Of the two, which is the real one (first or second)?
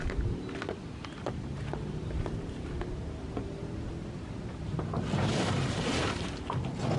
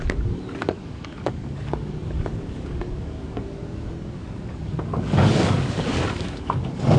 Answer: first